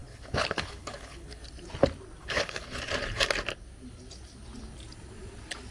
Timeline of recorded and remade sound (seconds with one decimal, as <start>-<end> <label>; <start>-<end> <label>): 0.0-1.4 remade; 1.4-2.2 recorded; 2.2-2.8 remade; 2.8-5.7 recorded